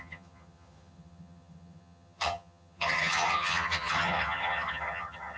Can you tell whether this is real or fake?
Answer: fake